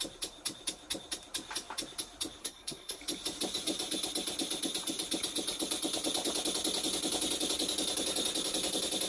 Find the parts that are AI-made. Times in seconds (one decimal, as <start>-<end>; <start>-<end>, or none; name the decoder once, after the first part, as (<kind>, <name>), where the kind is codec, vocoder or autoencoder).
2.4-3.0 (codec, SNAC)